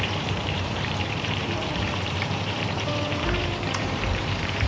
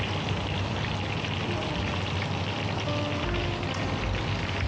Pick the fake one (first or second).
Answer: first